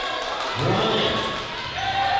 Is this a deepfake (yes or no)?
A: no